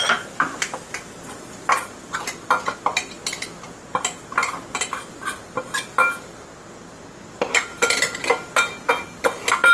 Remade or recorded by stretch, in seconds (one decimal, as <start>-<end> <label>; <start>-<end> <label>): 0.0-9.7 recorded